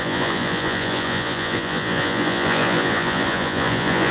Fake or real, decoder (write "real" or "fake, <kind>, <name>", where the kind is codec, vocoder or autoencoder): fake, vocoder, Vocos